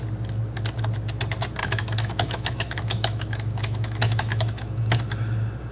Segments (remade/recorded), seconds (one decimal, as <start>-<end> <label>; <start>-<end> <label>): 0.0-1.6 recorded; 1.6-5.0 remade; 5.0-5.7 recorded